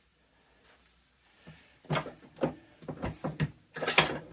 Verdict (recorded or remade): recorded